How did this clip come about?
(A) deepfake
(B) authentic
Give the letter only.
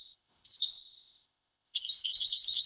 A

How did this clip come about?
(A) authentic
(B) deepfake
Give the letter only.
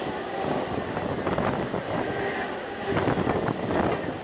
A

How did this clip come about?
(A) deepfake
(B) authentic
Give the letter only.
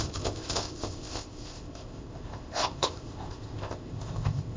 A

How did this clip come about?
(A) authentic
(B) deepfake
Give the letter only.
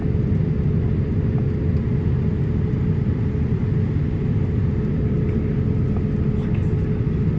A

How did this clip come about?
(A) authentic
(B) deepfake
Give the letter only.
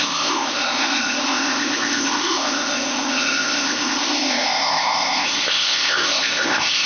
B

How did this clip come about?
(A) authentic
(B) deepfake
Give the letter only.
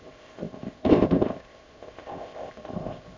B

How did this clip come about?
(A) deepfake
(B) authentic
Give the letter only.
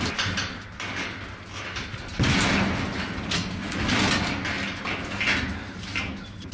B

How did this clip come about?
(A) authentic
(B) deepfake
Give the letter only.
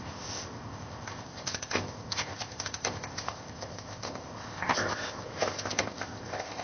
B